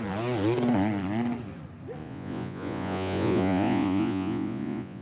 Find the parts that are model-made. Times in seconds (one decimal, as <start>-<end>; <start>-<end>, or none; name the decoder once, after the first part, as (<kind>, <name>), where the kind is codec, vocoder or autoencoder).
2.0-5.0 (vocoder, Vocos)